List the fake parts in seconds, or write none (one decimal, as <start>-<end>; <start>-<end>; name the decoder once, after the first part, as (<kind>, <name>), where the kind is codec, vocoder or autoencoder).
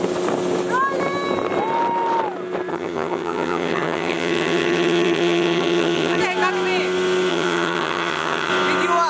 2.7-6.2 (vocoder, HiFi-GAN); 7.3-8.5